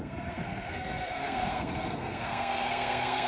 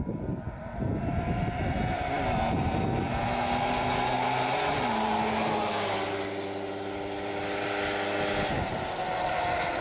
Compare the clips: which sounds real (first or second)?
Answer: second